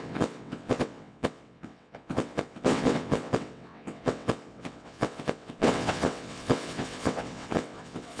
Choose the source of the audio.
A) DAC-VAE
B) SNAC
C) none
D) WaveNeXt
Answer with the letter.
D